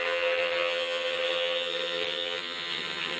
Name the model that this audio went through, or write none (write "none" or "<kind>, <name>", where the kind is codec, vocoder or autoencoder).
vocoder, HiFi-GAN